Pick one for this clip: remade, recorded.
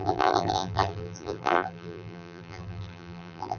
remade